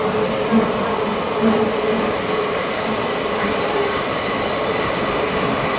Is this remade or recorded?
recorded